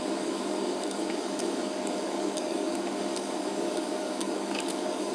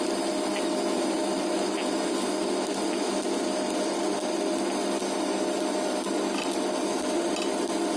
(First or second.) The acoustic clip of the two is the second